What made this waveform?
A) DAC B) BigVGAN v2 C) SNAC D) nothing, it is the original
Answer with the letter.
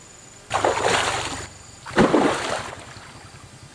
D